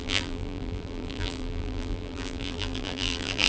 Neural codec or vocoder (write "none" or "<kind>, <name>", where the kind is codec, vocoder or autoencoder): vocoder, BigVGAN v2